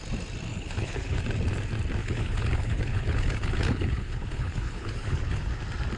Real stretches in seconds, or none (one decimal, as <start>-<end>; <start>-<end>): 0.0-0.5; 1.2-2.0; 5.6-6.0

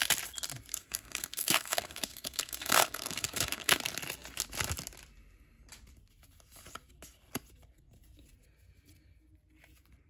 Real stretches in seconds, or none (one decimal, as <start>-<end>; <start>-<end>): 0.0-0.7; 3.8-10.1

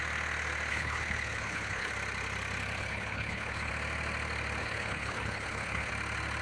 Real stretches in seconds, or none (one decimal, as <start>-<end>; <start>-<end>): 0.0-0.7; 1.9-2.8; 3.7-4.6; 5.9-6.4

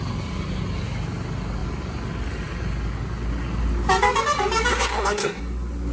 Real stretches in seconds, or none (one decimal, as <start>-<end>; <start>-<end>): 0.0-4.7; 5.4-5.9

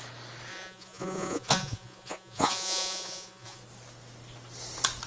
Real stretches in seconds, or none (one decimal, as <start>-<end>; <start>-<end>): 0.0-0.5; 3.6-5.1

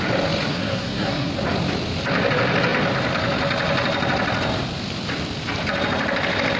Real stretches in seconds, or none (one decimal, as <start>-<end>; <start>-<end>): 0.0-0.5; 1.3-6.6

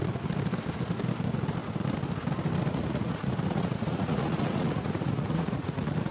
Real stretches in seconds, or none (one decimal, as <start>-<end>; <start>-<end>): 0.0-2.7